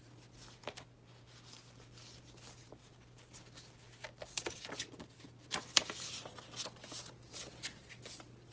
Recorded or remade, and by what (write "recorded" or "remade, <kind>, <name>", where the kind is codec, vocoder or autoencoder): recorded